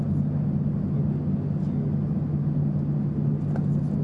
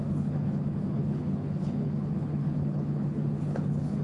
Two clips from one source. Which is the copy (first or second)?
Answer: second